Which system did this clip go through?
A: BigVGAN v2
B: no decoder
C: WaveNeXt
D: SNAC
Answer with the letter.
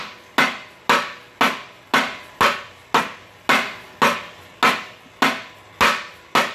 B